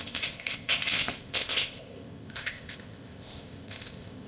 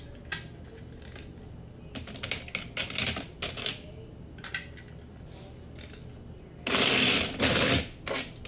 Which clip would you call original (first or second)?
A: second